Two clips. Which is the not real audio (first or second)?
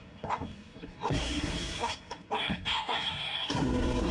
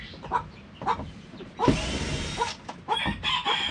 first